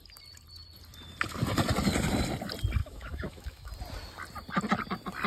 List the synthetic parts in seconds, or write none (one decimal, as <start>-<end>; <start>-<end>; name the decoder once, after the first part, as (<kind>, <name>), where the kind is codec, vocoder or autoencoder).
2.8-3.7 (autoencoder, DAC-VAE)